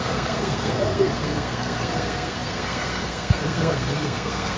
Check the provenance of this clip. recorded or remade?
remade